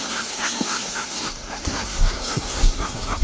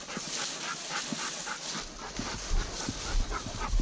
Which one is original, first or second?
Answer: second